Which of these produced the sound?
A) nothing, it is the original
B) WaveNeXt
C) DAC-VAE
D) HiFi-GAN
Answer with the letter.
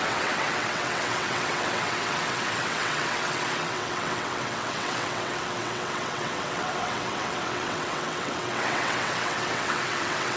B